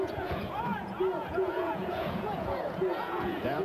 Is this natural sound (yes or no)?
no